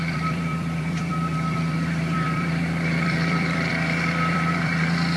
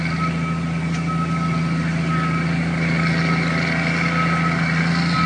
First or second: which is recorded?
second